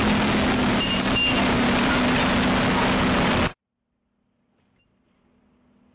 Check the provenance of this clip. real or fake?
real